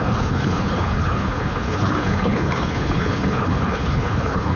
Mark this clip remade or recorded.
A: remade